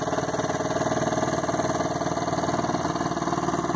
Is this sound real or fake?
real